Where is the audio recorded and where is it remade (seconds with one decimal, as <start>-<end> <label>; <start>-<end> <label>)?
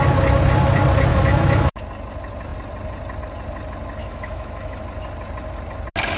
0.0-1.1 recorded; 1.1-1.8 remade; 1.8-4.0 recorded; 4.0-4.8 remade; 4.8-6.2 recorded